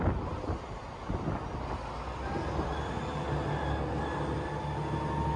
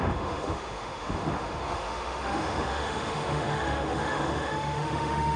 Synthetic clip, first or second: second